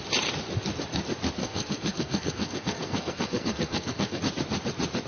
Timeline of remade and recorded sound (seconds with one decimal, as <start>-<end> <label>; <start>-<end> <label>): 0.0-1.4 recorded; 1.4-4.2 remade; 4.2-5.1 recorded